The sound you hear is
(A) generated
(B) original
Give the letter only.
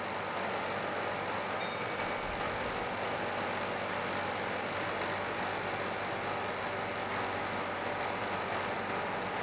B